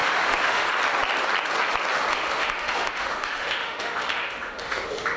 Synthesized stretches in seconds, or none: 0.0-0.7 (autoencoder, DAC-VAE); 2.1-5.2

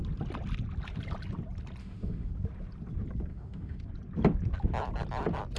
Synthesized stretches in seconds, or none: 1.8-2.3 (autoencoder, DAC-VAE); 3.3-3.8